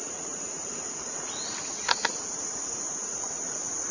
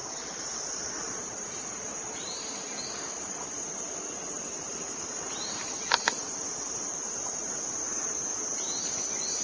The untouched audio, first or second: second